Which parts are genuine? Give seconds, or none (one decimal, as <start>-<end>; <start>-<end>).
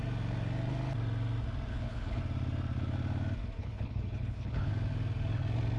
0.0-1.7; 2.2-3.6; 4.7-5.8